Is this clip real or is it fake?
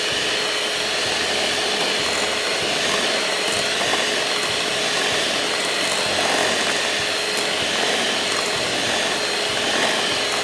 real